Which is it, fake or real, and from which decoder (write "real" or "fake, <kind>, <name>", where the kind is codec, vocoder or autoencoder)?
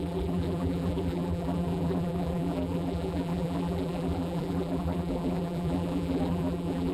fake, vocoder, BigVGAN v2